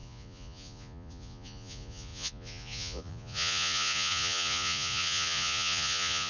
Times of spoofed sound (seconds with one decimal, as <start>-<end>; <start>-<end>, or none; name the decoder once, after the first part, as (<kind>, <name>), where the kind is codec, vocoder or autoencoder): 0.0-6.3 (vocoder, Vocos)